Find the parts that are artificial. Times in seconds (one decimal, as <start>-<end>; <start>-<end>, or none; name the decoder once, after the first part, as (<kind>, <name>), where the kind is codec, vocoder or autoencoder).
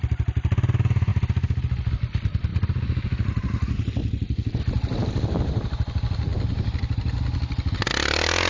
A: none